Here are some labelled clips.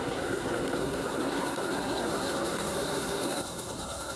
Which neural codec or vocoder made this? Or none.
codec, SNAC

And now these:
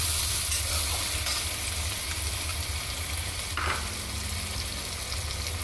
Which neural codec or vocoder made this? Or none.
none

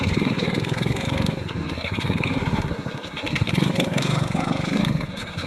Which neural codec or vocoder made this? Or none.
codec, SNAC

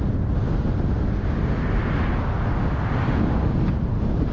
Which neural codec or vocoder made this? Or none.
none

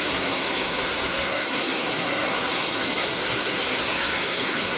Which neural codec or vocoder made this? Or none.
codec, SNAC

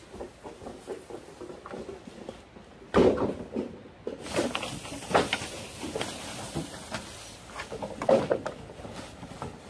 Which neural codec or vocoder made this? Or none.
none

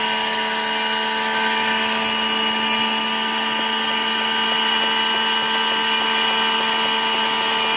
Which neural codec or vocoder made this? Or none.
none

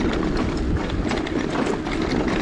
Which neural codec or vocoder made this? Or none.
none